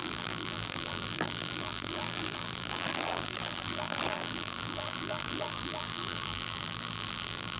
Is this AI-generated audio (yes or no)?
yes